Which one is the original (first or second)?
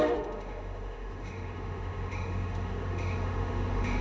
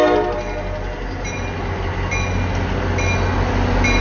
second